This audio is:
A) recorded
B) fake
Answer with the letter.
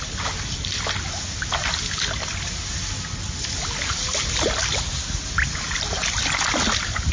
A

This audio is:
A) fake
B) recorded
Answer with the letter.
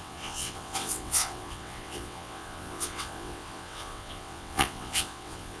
A